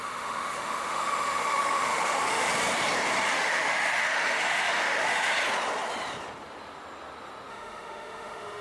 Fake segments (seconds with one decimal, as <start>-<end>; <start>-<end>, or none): 0.0-2.5; 3.3-5.3; 7.5-8.6